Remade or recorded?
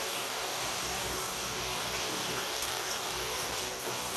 remade